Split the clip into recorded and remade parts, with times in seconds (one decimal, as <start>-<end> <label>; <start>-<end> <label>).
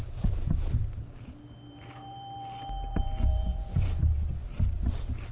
0.0-4.2 remade; 4.2-5.3 recorded